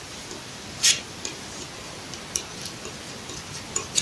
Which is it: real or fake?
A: fake